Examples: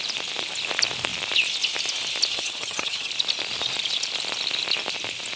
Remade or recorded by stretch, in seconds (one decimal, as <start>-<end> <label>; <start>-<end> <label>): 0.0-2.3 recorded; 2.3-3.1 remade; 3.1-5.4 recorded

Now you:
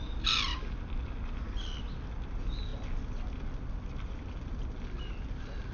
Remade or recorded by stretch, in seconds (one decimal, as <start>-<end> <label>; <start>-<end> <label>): 0.0-5.7 recorded

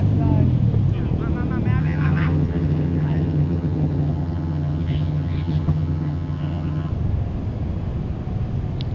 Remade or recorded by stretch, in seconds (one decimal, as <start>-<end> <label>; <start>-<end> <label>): 0.0-1.8 recorded; 1.8-6.9 remade; 6.9-8.9 recorded

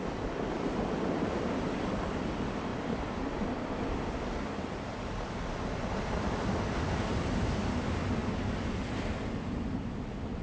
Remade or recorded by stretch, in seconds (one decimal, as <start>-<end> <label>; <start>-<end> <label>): 0.0-10.4 recorded